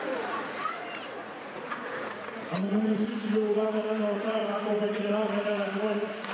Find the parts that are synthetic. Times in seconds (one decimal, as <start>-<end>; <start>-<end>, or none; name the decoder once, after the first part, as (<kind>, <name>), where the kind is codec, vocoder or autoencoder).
0.0-4.4 (vocoder, Vocos); 5.0-6.3